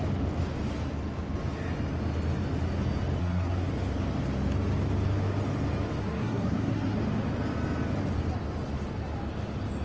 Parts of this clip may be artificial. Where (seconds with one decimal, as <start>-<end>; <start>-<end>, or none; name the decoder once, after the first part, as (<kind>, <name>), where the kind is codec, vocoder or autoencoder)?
3.2-3.7 (codec, SNAC); 6.0-7.0

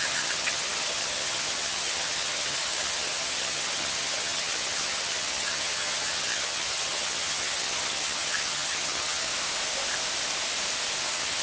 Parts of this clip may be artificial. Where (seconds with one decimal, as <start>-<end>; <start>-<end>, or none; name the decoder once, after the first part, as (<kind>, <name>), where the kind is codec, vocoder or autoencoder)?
0.0-9.3 (vocoder, HiFi-GAN); 11.0-11.4

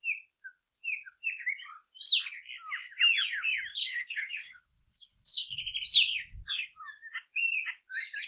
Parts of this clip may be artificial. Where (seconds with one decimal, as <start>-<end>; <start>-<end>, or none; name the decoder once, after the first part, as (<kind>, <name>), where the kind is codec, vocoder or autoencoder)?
3.7-5.6 (codec, HILCodec)

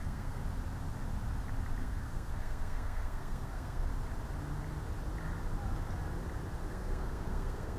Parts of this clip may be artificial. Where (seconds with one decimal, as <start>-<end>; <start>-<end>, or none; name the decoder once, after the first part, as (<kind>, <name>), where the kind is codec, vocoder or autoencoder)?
0.0-0.4 (codec, SNAC); 1.8-3.9; 6.7-7.8

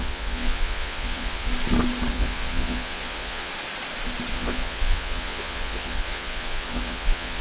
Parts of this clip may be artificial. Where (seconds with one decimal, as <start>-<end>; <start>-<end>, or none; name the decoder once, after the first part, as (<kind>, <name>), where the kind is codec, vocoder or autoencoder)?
0.0-1.5 (vocoder, Vocos); 2.1-3.5; 4.3-7.4

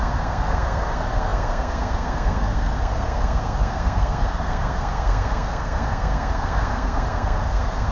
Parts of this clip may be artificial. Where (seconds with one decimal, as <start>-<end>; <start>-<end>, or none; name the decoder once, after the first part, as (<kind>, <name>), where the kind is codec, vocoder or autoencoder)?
0.0-7.9 (codec, SNAC)